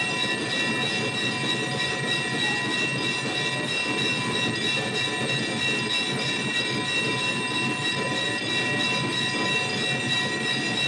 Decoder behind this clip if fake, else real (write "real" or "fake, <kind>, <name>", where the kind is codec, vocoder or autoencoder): real